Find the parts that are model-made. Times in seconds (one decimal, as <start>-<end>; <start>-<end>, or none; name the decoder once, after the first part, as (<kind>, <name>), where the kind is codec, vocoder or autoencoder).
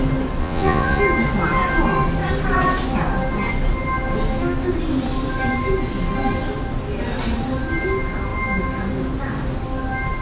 0.4-1.0 (vocoder, Vocos)